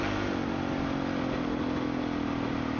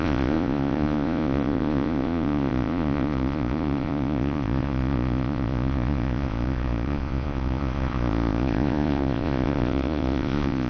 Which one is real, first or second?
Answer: first